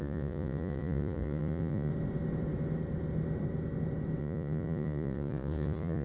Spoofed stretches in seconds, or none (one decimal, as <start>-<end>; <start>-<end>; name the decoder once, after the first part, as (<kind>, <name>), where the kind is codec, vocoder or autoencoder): 0.0-1.9 (vocoder, Vocos); 4.2-6.0